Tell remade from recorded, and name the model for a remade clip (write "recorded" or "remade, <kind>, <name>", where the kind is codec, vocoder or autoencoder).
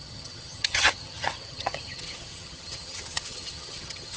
remade, vocoder, HiFi-GAN